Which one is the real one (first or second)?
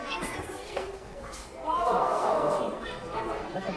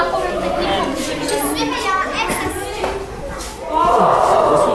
second